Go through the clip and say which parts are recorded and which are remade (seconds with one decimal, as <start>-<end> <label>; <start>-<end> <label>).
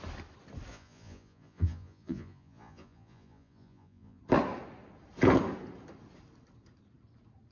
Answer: 0.0-0.7 recorded; 0.7-4.2 remade; 4.2-7.5 recorded